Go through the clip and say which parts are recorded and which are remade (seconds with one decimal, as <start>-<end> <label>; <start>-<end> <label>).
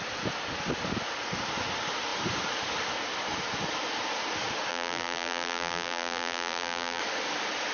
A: 0.0-4.7 recorded; 4.7-7.0 remade; 7.0-7.7 recorded